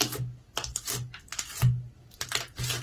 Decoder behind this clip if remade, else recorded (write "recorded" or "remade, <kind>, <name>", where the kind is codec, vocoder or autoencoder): recorded